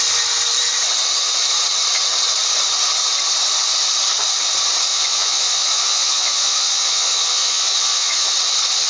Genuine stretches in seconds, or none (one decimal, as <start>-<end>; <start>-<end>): 0.0-4.9; 8.3-8.9